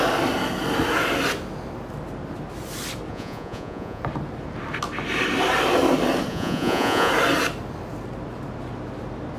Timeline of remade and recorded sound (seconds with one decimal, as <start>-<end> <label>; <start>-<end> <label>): 0.0-3.1 recorded; 3.1-4.0 remade; 4.0-6.3 recorded; 6.3-7.1 remade; 7.1-9.4 recorded